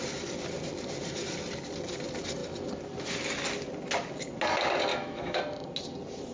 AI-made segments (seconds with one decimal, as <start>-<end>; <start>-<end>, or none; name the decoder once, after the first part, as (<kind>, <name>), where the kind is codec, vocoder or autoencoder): 4.9-5.4 (autoencoder, DAC-VAE)